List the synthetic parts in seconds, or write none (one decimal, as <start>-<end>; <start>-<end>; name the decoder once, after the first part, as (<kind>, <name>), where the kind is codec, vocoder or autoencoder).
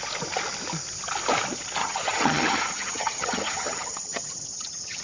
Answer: 1.8-5.0 (vocoder, HiFi-GAN)